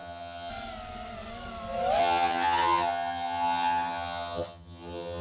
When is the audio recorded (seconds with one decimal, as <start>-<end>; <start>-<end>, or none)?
0.5-2.0